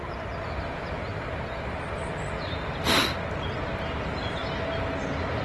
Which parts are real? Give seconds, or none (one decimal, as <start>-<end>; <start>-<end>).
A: 0.0-5.4